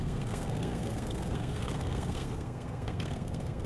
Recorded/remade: remade